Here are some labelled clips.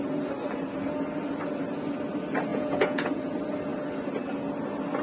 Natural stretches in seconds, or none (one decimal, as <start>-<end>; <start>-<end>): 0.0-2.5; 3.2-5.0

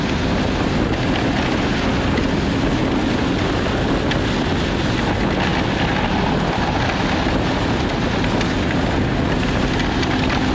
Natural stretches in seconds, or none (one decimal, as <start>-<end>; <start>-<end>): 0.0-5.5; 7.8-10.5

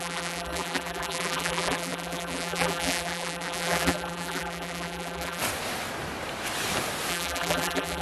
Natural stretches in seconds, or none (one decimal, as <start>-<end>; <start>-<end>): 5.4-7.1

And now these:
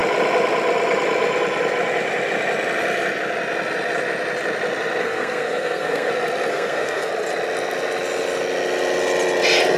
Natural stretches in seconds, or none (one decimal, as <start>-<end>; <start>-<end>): 0.0-5.0; 6.1-6.5; 7.1-9.8